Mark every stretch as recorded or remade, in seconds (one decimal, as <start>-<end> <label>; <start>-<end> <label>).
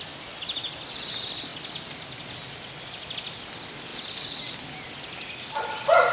0.0-6.1 recorded